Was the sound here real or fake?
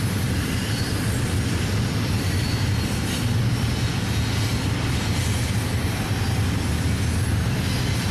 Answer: real